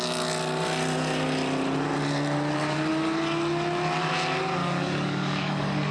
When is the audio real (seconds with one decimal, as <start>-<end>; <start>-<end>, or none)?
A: 0.0-4.6